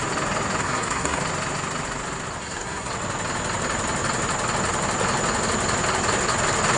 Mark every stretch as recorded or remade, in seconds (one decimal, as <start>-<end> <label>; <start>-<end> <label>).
0.0-0.6 recorded; 0.6-1.2 remade; 1.2-2.4 recorded; 2.4-2.9 remade; 2.9-6.8 recorded